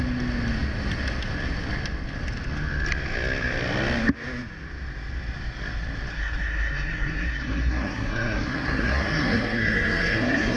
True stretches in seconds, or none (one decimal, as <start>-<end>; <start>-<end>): 0.0-6.1